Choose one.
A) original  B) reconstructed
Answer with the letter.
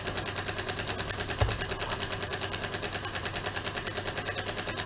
A